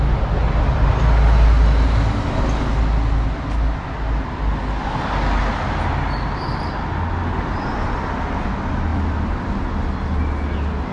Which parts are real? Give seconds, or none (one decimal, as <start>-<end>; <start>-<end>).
0.0-0.4; 0.9-8.9; 9.5-10.9